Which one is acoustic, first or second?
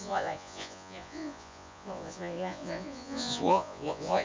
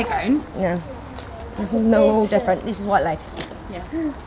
second